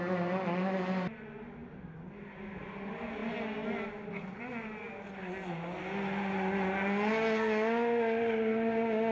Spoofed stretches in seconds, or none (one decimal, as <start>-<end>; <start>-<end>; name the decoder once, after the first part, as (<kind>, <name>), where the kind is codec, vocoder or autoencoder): none